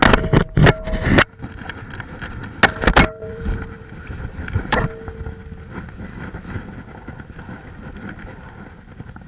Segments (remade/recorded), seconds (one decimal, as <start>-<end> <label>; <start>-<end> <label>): 0.0-3.2 recorded; 3.2-4.8 remade; 4.8-9.3 recorded